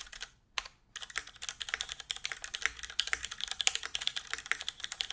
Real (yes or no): yes